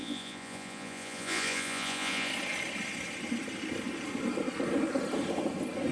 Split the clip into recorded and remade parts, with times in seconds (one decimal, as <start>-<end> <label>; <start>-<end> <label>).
0.0-2.3 remade; 2.3-5.9 recorded